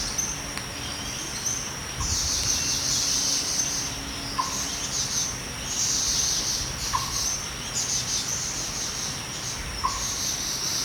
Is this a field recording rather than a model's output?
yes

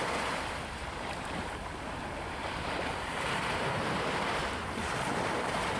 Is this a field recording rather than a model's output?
no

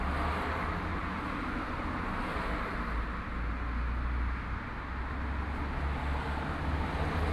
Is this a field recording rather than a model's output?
yes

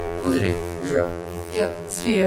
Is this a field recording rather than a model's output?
no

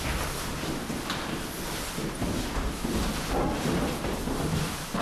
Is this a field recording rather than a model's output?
yes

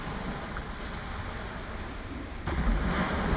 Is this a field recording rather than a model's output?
yes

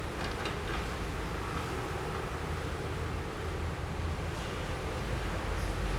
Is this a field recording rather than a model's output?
yes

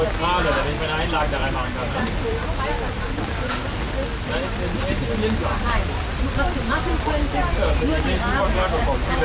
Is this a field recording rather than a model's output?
yes